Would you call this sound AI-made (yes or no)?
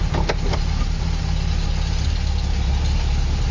no